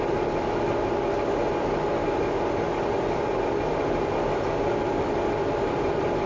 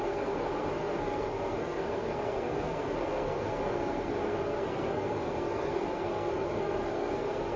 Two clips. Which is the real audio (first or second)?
first